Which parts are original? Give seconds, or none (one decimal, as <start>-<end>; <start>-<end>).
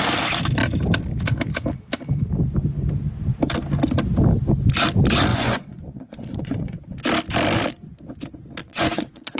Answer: 0.0-5.3; 6.8-8.6